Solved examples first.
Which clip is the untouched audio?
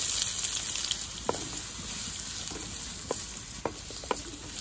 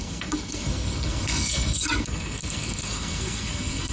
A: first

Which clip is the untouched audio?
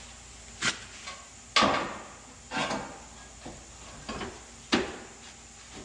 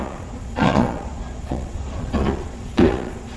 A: first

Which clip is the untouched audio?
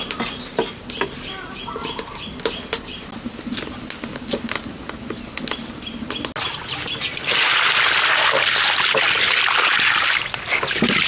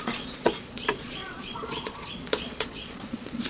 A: first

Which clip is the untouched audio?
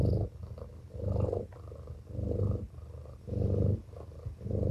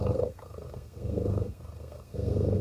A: first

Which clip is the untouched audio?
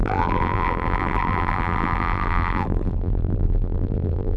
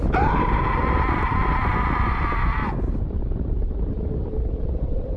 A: second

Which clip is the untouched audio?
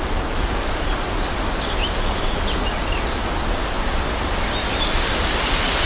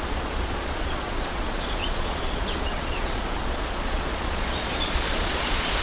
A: first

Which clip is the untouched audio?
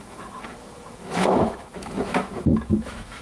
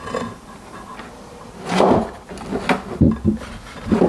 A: second